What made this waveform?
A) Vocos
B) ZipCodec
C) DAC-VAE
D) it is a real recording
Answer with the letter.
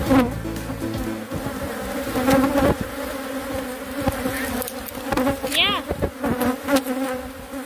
D